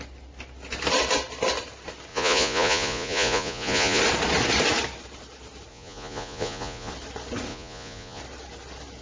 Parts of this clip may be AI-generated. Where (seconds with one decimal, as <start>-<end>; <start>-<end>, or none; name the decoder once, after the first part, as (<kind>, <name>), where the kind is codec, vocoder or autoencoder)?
2.1-4.0 (vocoder, Vocos); 5.7-6.9; 7.5-8.2